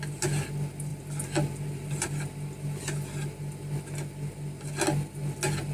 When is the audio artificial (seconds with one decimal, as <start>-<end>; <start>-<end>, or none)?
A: none